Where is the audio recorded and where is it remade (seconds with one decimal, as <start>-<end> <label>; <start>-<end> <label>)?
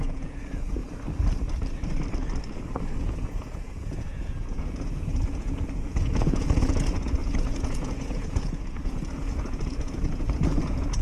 0.0-0.8 remade; 0.8-3.0 recorded; 3.0-11.0 remade